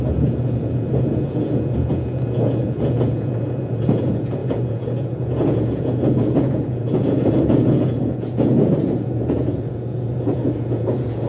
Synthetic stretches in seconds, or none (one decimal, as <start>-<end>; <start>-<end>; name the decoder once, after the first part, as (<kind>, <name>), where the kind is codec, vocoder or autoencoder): 0.0-11.3 (vocoder, Vocos)